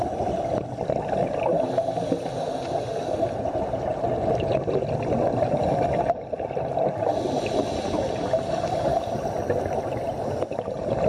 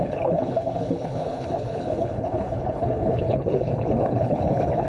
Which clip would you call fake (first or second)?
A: second